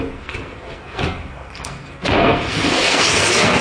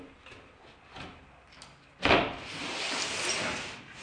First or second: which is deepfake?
first